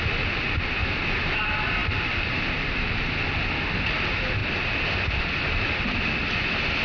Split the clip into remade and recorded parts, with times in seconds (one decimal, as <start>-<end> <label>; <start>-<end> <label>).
0.0-0.8 recorded; 0.8-1.4 remade; 1.4-1.8 recorded; 1.8-3.4 remade; 3.4-4.4 recorded; 4.4-5.3 remade; 5.3-6.8 recorded